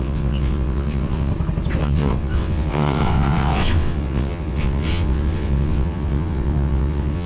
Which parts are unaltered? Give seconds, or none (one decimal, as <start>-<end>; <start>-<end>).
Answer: 1.3-1.8